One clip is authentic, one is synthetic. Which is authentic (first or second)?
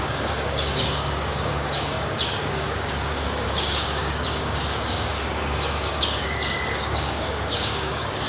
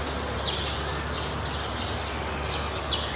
second